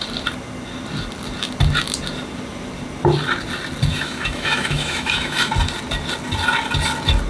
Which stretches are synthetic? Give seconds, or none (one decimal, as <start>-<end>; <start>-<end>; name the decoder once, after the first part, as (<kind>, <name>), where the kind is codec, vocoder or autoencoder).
3.9-5.5 (autoencoder, DAC-VAE)